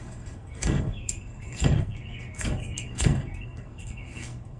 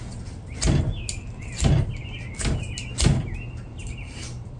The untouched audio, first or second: second